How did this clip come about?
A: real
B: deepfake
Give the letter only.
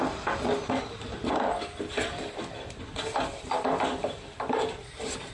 B